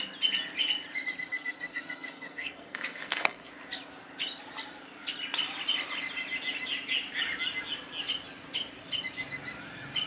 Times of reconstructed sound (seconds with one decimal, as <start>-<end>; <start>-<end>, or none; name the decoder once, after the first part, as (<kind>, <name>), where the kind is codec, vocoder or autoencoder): 1.3-3.5 (codec, SNAC)